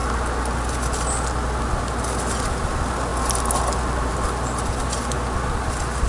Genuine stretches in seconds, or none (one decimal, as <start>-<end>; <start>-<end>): 0.0-1.7; 3.1-4.1